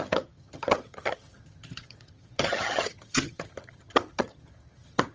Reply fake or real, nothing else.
fake